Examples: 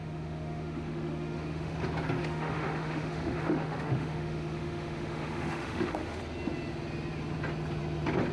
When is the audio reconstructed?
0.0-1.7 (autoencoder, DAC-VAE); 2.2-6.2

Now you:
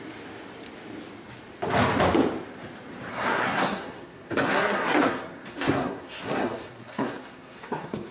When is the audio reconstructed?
3.1-8.1 (codec, SNAC)

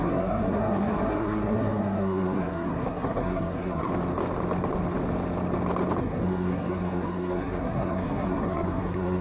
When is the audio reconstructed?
0.0-3.9 (codec, SNAC); 6.0-9.2